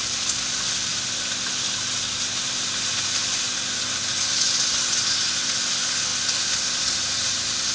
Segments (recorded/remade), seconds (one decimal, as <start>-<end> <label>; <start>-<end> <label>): 0.0-7.7 recorded